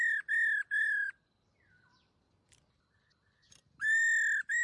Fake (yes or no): no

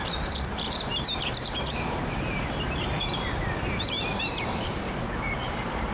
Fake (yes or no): yes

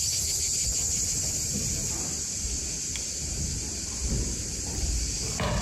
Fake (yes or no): no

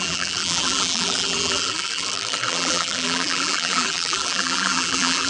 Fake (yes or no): yes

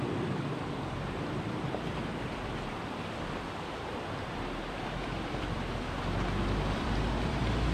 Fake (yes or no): yes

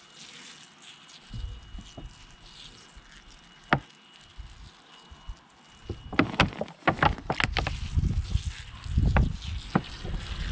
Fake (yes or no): no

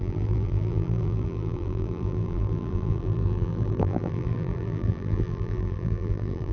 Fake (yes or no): yes